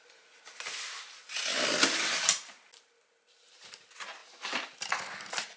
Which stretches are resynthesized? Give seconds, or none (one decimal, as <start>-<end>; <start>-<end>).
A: none